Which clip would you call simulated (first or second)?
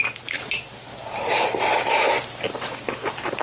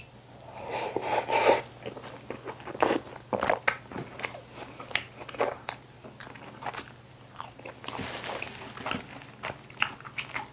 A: first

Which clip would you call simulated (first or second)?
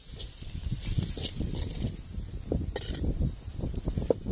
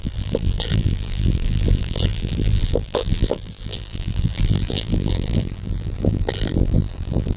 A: second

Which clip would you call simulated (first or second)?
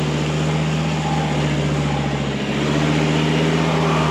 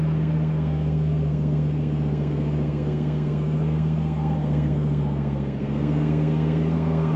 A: second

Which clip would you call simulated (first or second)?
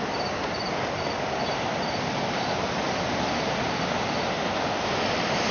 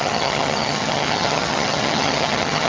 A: second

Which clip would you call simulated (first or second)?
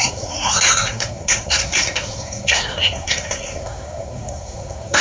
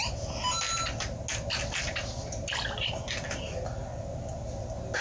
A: first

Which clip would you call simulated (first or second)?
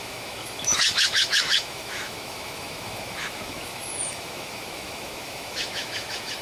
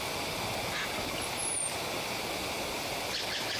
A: first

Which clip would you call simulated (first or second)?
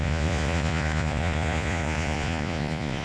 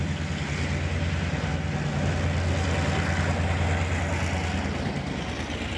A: first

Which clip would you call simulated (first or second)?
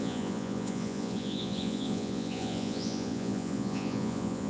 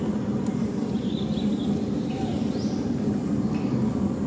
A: first